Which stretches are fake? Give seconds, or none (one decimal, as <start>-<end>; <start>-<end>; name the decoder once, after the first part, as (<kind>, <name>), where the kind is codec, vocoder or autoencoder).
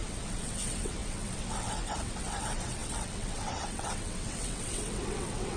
0.0-5.6 (vocoder, WaveNeXt)